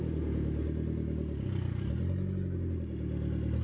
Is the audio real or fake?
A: real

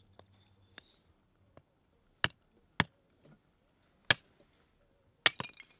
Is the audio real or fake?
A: real